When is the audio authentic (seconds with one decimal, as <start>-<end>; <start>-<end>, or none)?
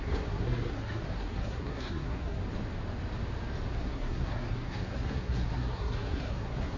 2.4-3.8